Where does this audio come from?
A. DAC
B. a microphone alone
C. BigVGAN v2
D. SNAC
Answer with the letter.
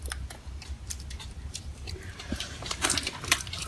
C